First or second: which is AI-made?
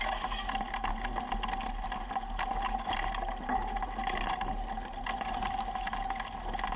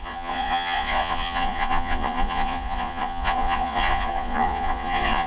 second